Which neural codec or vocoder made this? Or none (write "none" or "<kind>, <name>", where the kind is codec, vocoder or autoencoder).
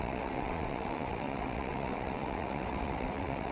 vocoder, WaveNeXt